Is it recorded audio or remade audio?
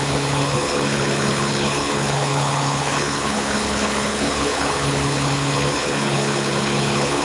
remade